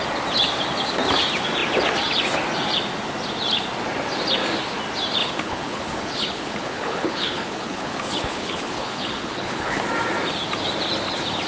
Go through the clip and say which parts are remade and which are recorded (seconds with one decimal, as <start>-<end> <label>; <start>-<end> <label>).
0.0-5.2 recorded; 5.2-9.8 remade; 9.8-11.5 recorded